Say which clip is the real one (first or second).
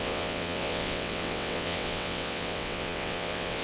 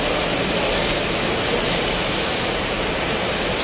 second